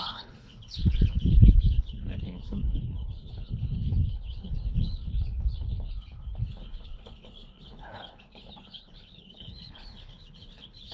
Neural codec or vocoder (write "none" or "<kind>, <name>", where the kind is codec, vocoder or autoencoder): codec, HILCodec